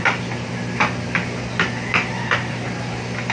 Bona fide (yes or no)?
yes